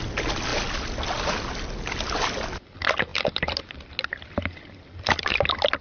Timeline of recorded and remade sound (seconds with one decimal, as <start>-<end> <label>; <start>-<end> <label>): 0.0-5.8 recorded